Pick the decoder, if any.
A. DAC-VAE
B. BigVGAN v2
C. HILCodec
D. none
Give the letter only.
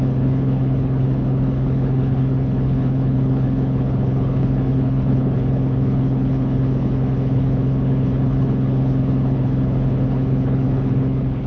C